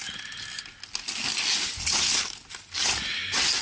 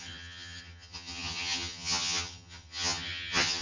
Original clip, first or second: first